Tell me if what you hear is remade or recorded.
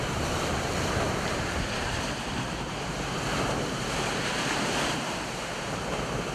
remade